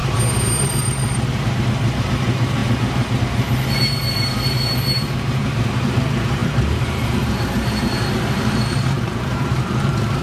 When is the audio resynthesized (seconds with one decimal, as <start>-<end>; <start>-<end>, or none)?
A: 0.6-10.2